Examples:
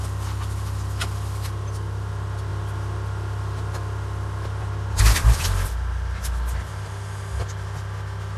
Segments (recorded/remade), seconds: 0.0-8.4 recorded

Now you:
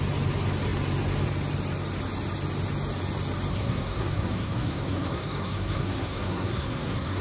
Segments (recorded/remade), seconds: 0.0-3.5 recorded; 3.5-7.2 remade

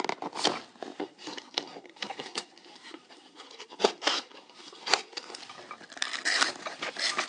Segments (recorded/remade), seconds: 0.0-1.0 recorded; 1.0-5.4 remade; 5.4-7.3 recorded

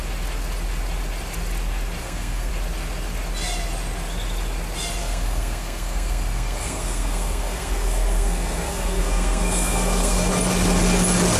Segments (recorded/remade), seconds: 0.0-2.0 recorded; 2.0-2.5 remade; 2.5-5.0 recorded; 5.0-10.3 remade; 10.3-11.4 recorded

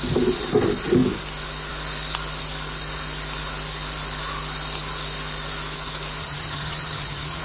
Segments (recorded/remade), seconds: 0.0-6.2 recorded; 6.2-7.4 remade

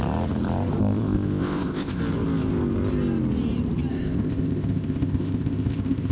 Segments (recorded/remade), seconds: 0.0-0.8 recorded; 0.8-2.0 remade; 2.0-3.9 recorded; 3.9-6.1 remade

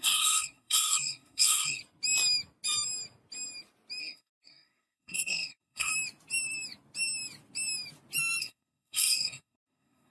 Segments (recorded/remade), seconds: 0.0-1.8 remade; 1.8-4.0 recorded; 4.0-5.9 remade; 5.9-8.4 recorded; 8.4-10.1 remade

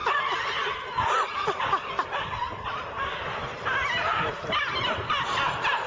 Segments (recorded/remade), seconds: 0.0-5.9 recorded